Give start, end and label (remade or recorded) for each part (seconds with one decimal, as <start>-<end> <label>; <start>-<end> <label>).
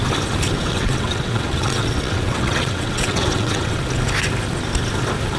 0.0-0.6 recorded; 0.6-3.8 remade; 3.8-5.4 recorded